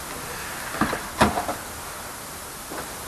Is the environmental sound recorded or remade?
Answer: recorded